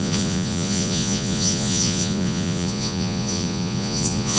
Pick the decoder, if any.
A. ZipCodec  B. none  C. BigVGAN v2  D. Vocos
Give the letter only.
D